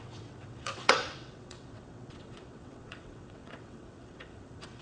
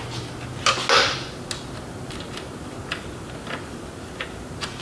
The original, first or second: second